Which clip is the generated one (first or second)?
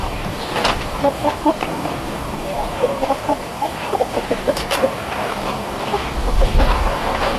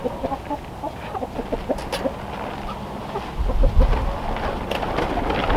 first